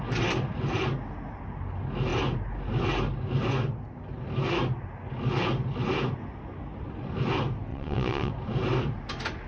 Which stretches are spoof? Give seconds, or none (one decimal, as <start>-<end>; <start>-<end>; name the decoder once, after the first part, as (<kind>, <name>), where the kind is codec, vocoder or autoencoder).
7.7-8.3 (vocoder, WaveNeXt)